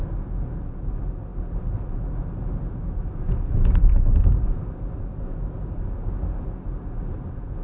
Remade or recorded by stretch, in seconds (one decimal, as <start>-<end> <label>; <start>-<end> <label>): 0.0-7.6 recorded